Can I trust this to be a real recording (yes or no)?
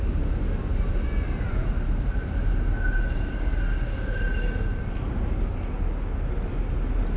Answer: yes